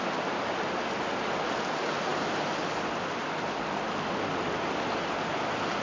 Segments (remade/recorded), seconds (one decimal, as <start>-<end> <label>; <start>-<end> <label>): 0.0-5.8 recorded

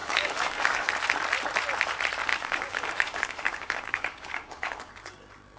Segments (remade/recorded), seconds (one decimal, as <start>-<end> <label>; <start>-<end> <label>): 0.0-0.9 remade; 0.9-2.3 recorded; 2.3-4.9 remade; 4.9-5.6 recorded

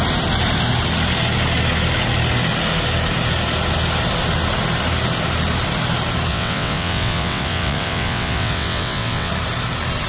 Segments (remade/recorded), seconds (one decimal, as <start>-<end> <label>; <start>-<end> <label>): 0.0-6.3 recorded; 6.3-9.3 remade; 9.3-10.1 recorded

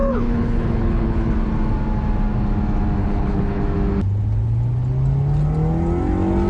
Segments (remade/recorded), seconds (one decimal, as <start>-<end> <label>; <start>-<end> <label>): 0.0-1.3 remade; 1.3-3.0 recorded; 3.0-3.6 remade; 3.6-6.5 recorded

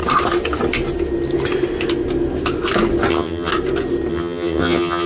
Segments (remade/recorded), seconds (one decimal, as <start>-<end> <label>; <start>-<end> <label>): 0.0-3.1 recorded; 3.1-3.5 remade; 3.5-4.1 recorded; 4.1-5.1 remade